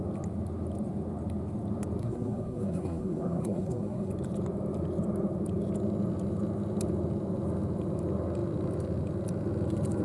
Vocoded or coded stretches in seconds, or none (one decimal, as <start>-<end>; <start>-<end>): 2.0-4.1